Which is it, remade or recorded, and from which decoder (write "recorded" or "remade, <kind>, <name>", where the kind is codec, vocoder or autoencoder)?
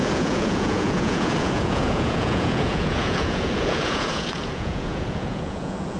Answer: remade, vocoder, Vocos